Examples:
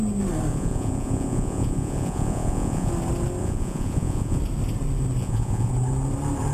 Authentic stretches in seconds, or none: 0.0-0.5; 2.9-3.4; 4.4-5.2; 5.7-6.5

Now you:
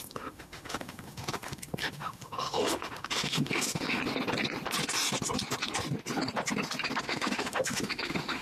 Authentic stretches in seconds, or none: 4.0-7.0

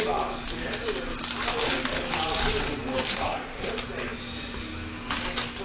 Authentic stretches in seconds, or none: 0.0-3.1; 3.7-5.6

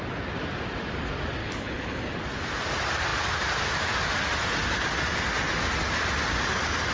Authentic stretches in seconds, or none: 0.0-1.4; 2.1-6.9

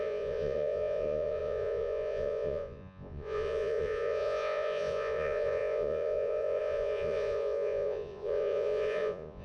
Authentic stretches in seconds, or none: none

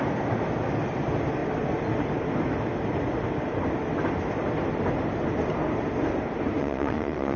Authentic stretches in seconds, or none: 0.0-6.6

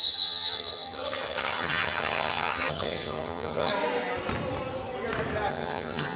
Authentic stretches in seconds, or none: 3.7-5.5